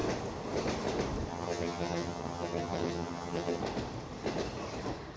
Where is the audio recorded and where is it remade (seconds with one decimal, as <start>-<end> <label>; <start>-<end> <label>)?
0.0-1.3 recorded; 1.3-3.6 remade; 3.6-5.2 recorded